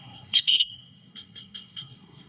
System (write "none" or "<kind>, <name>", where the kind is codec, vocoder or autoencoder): codec, SNAC